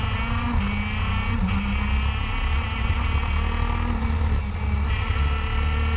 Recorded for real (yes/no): yes